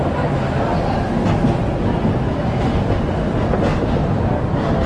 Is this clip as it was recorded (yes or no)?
yes